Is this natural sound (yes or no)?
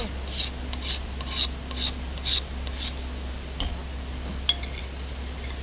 yes